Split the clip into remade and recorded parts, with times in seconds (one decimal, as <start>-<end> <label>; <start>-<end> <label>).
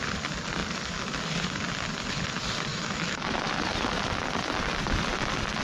0.0-2.7 recorded; 2.7-3.6 remade; 3.6-5.6 recorded